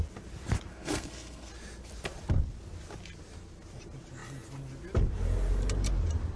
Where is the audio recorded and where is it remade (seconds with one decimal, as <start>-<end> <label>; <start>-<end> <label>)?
0.0-0.7 recorded; 0.7-1.5 remade; 1.5-6.4 recorded